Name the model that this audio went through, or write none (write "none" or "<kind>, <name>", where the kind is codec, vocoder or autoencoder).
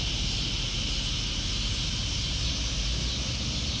none